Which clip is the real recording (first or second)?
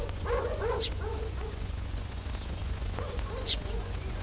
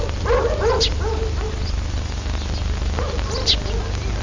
second